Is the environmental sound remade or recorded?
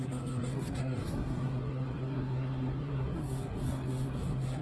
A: remade